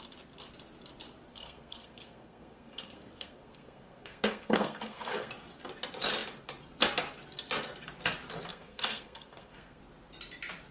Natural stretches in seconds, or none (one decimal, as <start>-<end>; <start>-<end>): 0.0-1.3; 5.3-8.5; 9.8-10.7